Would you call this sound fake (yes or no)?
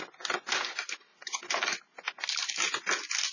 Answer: no